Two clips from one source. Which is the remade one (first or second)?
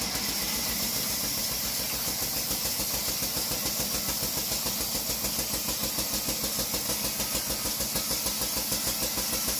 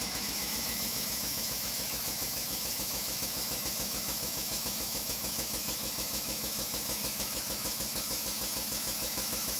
second